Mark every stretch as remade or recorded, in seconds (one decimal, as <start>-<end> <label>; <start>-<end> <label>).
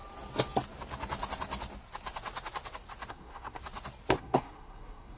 0.0-3.1 recorded; 3.1-3.6 remade; 3.6-4.2 recorded; 4.2-5.2 remade